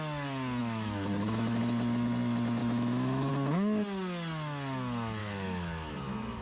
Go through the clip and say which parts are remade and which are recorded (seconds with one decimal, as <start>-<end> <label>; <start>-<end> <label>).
0.0-0.6 recorded; 0.6-1.6 remade; 1.6-2.6 recorded; 2.6-3.3 remade; 3.3-5.2 recorded; 5.2-5.9 remade; 5.9-6.4 recorded